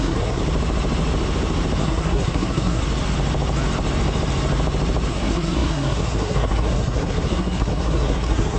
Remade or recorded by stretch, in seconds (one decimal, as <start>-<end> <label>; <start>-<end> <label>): 0.0-0.4 remade; 0.4-1.8 recorded; 1.8-2.8 remade; 2.8-5.1 recorded; 5.1-8.6 remade